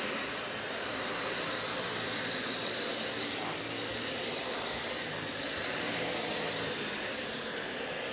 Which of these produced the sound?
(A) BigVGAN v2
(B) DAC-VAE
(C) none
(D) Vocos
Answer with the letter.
A